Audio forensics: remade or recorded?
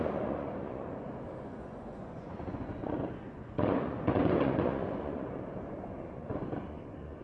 remade